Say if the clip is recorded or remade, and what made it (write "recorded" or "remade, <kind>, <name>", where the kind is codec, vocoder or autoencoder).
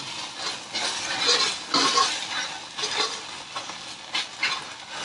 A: recorded